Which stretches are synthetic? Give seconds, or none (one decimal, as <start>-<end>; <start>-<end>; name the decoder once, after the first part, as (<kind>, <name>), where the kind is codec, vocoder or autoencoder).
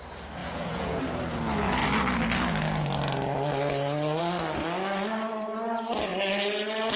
0.4-1.0 (vocoder, Vocos)